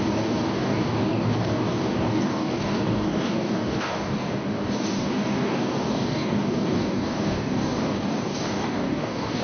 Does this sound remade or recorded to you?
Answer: remade